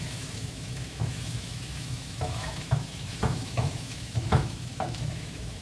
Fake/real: fake